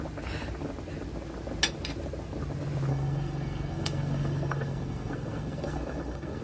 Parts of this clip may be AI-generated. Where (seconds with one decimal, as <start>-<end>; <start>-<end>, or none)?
2.9-6.4